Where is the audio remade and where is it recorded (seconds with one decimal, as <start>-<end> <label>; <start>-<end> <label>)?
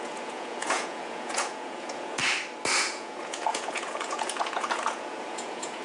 0.0-2.2 remade; 2.2-2.8 recorded; 2.8-5.8 remade